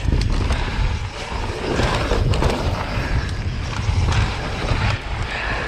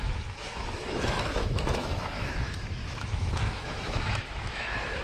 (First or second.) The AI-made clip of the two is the second